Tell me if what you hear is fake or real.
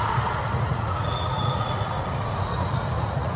fake